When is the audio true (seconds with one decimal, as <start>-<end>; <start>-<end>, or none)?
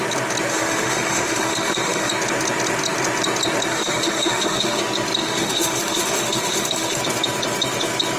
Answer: 0.0-0.5; 2.1-3.7; 4.8-5.2; 7.0-8.2